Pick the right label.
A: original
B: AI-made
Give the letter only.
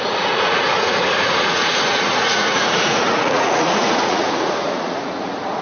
B